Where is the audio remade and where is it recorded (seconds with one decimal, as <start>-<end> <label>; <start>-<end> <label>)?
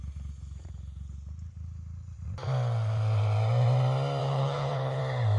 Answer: 0.0-4.2 recorded; 4.2-5.0 remade; 5.0-5.4 recorded